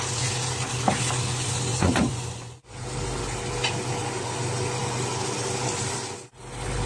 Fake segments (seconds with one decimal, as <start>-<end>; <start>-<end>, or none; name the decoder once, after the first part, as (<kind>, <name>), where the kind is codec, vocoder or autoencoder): 1.7-2.7 (vocoder, Vocos)